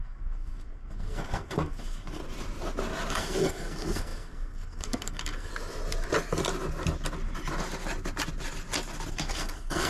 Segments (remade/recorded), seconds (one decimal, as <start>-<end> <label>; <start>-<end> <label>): 0.0-2.2 remade; 2.2-3.1 recorded; 3.1-5.5 remade; 5.5-9.1 recorded; 9.1-9.9 remade